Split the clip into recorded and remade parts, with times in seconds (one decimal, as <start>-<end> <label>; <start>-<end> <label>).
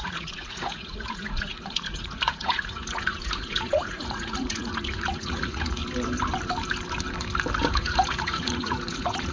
0.0-5.8 remade; 5.8-7.6 recorded; 7.6-9.3 remade